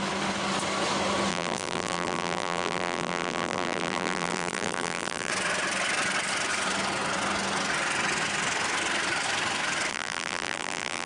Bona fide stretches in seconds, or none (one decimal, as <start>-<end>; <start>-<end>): 0.0-1.3; 5.3-9.9